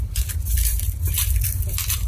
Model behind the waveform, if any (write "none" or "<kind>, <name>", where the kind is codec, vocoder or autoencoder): vocoder, BigVGAN v2